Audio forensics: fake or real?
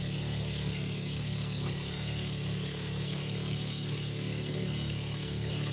fake